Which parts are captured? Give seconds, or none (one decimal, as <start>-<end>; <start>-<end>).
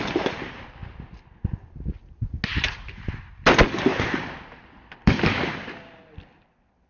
0.0-2.5; 3.1-3.9; 6.0-6.9